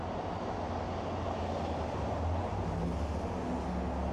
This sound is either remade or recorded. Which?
recorded